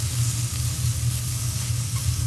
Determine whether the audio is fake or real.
real